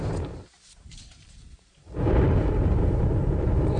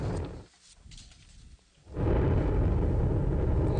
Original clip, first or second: second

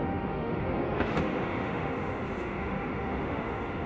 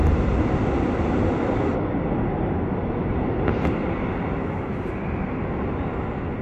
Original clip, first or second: second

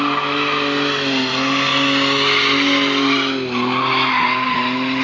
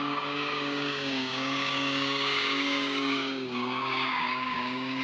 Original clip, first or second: first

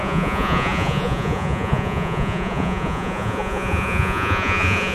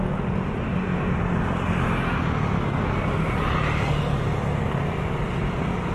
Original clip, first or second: second